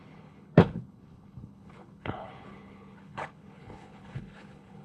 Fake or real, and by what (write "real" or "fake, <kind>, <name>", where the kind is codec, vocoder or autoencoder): fake, codec, HILCodec